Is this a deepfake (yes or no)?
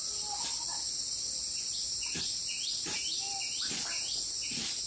no